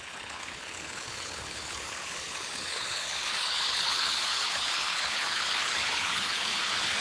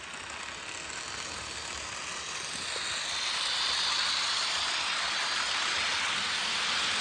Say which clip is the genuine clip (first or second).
second